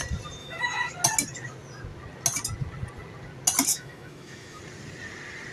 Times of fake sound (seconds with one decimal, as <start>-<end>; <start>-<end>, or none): 0.4-0.9; 3.7-4.6